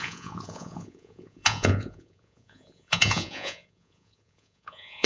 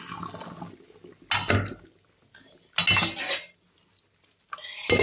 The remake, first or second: first